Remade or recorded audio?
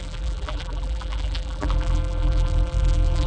remade